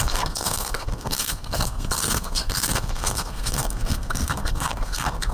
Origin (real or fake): fake